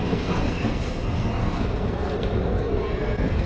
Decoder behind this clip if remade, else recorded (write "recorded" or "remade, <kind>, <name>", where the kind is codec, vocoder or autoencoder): remade, codec, SNAC